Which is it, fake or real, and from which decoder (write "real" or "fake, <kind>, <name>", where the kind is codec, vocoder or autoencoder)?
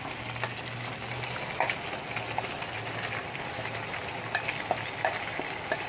real